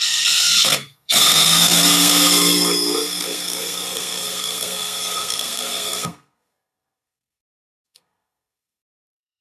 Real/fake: fake